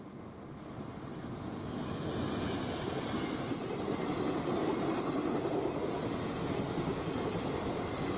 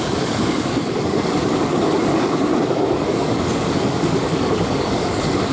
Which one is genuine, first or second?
first